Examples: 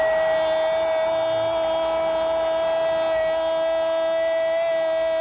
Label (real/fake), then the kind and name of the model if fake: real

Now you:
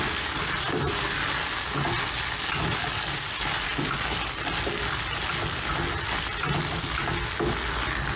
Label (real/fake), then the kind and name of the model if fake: real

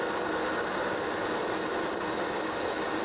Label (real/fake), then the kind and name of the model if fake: real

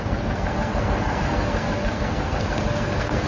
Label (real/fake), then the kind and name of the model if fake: fake, codec, SNAC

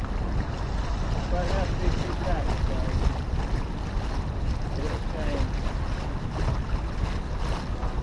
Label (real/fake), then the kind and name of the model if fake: real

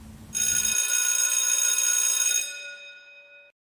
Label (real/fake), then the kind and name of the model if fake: real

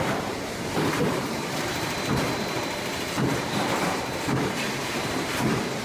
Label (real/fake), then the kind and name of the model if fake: fake, vocoder, BigVGAN v2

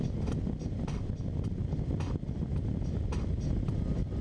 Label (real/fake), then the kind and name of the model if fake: real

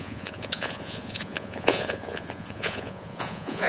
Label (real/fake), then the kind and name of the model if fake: fake, vocoder, Vocos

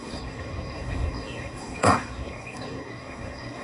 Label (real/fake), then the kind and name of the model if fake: fake, codec, SNAC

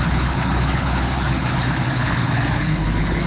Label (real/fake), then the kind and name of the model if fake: fake, codec, HILCodec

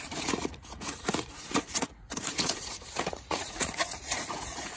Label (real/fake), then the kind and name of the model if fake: fake, vocoder, Vocos